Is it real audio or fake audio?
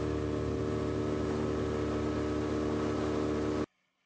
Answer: real